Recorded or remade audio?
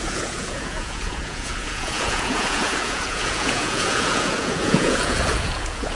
remade